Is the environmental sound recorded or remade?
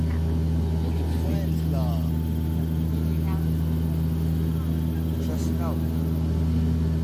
recorded